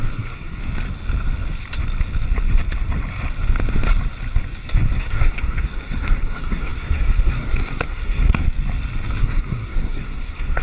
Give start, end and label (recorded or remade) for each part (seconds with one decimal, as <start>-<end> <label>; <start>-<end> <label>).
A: 0.0-0.6 remade; 0.6-5.0 recorded; 5.0-8.4 remade; 8.4-9.2 recorded; 9.2-10.6 remade